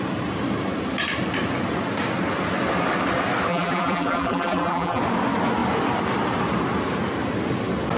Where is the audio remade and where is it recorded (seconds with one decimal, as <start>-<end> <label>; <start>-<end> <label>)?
0.0-3.5 recorded; 3.5-5.0 remade; 5.0-8.0 recorded